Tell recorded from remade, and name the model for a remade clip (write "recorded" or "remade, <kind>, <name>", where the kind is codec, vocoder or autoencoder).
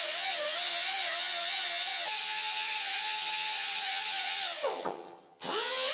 remade, vocoder, HiFi-GAN